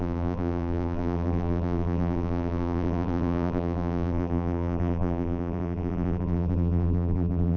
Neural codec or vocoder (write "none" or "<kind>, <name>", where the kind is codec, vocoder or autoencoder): vocoder, BigVGAN v2